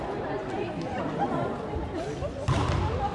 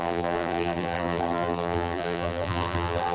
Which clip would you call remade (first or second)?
second